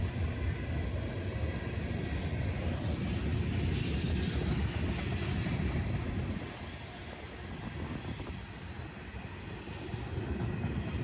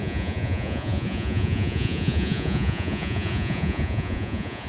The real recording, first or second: first